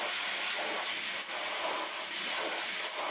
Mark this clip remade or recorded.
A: recorded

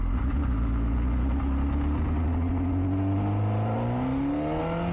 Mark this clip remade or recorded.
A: recorded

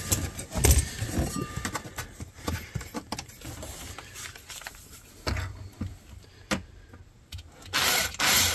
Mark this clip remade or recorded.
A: recorded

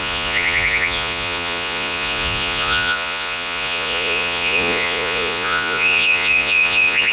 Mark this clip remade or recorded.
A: remade